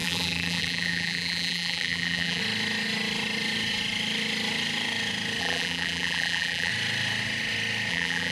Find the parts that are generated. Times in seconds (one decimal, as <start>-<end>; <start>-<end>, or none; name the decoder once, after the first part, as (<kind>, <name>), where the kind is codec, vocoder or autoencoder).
0.0-2.4 (vocoder, BigVGAN v2); 5.4-6.7; 7.9-8.3